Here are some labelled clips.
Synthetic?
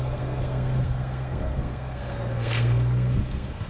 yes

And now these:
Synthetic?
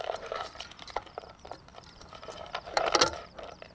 no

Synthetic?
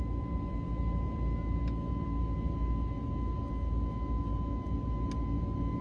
no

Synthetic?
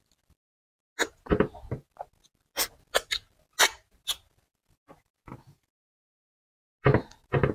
no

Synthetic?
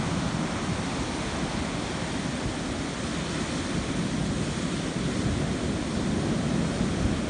no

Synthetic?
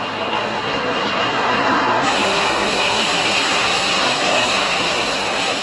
yes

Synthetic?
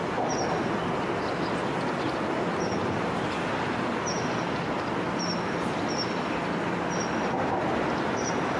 no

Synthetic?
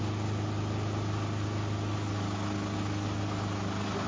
no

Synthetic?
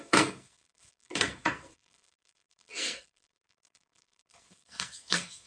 yes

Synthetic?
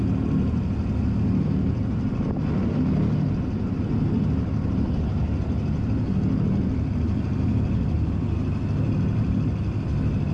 no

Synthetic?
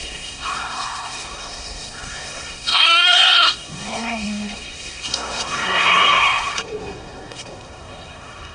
yes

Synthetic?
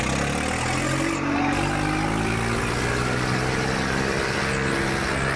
no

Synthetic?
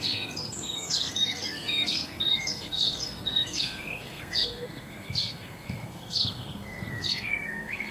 yes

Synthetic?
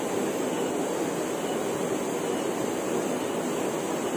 no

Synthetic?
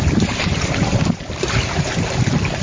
no